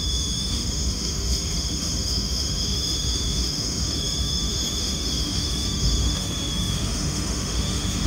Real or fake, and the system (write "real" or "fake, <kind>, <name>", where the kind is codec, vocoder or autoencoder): fake, autoencoder, DAC-VAE